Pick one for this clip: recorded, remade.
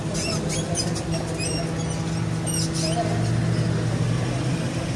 recorded